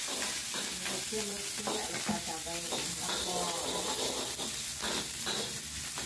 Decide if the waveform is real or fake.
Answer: real